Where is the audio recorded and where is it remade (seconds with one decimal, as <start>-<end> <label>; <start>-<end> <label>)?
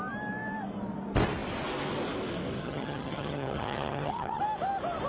0.0-2.6 recorded; 2.6-4.4 remade; 4.4-5.1 recorded